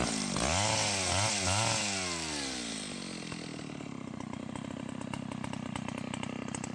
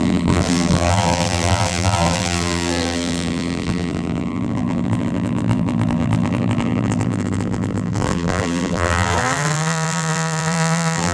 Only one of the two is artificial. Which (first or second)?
second